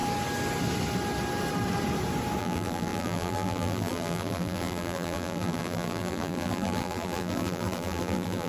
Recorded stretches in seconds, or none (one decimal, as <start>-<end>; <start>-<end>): 0.0-2.4